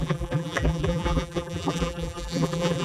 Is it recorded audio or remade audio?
remade